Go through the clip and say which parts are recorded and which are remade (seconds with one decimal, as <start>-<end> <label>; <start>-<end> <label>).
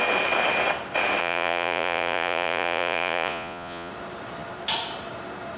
0.0-1.2 recorded; 1.2-3.9 remade; 3.9-5.6 recorded